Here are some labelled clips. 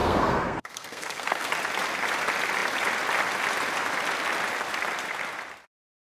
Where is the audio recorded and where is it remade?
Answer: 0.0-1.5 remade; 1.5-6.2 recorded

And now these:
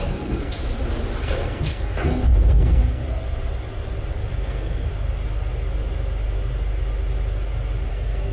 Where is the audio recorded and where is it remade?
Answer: 0.0-0.6 remade; 0.6-1.2 recorded; 1.2-3.0 remade; 3.0-4.3 recorded; 4.3-4.9 remade; 4.9-7.9 recorded; 7.9-8.3 remade

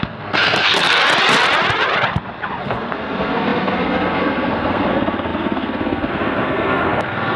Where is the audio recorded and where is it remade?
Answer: 0.0-1.0 remade; 1.0-2.6 recorded; 2.6-7.4 remade

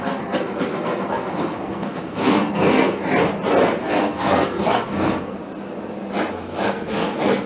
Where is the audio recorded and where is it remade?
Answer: 0.0-3.0 remade; 3.0-3.8 recorded; 3.8-5.4 remade; 5.4-6.3 recorded; 6.3-7.5 remade

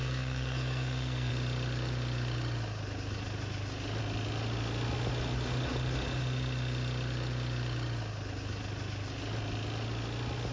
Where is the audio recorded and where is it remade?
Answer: 0.0-1.3 remade; 1.3-10.5 recorded

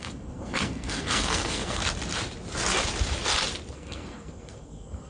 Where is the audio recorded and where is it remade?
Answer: 0.0-1.8 remade; 1.8-3.7 recorded; 3.7-5.1 remade